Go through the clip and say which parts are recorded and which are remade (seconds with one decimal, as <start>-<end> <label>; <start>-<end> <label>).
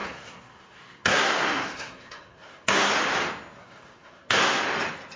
0.0-2.9 remade; 2.9-3.6 recorded; 3.6-4.6 remade; 4.6-5.2 recorded